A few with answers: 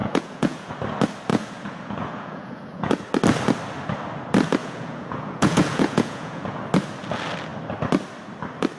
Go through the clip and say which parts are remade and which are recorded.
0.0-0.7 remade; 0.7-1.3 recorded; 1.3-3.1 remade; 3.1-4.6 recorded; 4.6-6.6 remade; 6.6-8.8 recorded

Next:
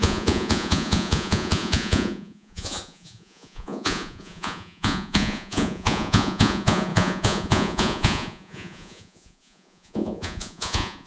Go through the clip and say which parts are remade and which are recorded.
0.0-11.1 remade

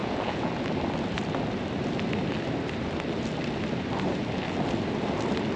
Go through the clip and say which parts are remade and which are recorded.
0.0-0.5 remade; 0.5-5.6 recorded

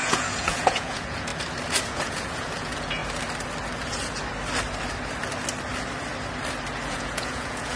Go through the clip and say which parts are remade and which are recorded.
0.0-1.3 remade; 1.3-1.8 recorded; 1.8-3.0 remade; 3.0-6.9 recorded; 6.9-7.8 remade

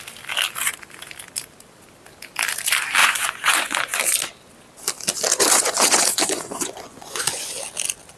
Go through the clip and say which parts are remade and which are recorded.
0.0-3.0 recorded; 3.0-4.0 remade; 4.0-5.3 recorded; 5.3-7.5 remade; 7.5-8.2 recorded

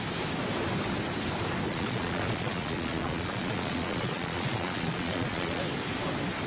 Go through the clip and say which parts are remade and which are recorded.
0.0-1.7 recorded; 1.7-5.6 remade; 5.6-6.5 recorded

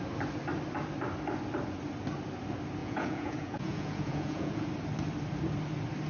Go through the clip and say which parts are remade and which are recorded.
0.0-2.8 recorded; 2.8-4.7 remade; 4.7-6.1 recorded

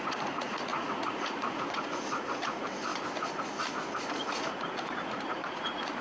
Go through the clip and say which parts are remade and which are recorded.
0.0-2.9 remade; 2.9-4.1 recorded; 4.1-6.0 remade